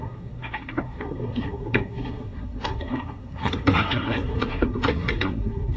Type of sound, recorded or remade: remade